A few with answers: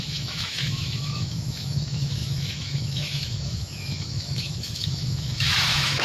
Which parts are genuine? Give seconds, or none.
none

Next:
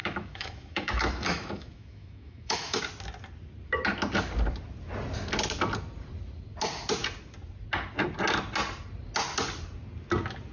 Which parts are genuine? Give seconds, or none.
2.8-10.5

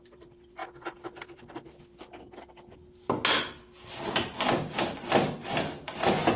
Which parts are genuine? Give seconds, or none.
0.0-6.4

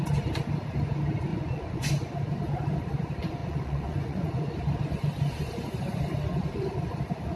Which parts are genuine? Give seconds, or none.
0.0-1.3; 1.9-3.4; 4.5-7.4